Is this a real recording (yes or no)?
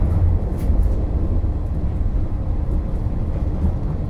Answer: yes